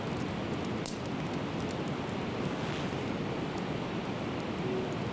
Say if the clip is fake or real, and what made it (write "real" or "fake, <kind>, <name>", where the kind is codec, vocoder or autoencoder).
real